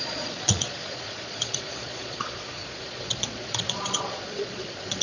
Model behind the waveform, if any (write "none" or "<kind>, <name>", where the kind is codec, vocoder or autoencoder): vocoder, Vocos